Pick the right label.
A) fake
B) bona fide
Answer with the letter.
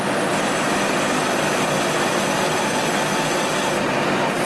B